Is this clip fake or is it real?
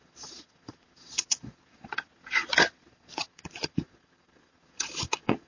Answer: fake